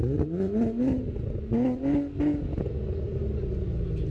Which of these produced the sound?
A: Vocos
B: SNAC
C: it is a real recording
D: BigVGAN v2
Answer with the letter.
C